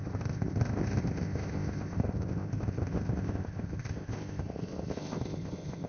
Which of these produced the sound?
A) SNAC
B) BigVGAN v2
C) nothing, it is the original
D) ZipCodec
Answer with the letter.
D